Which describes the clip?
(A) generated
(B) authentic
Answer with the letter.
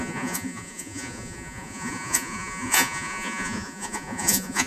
A